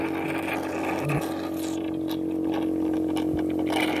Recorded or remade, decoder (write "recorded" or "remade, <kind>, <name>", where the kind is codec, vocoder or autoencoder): recorded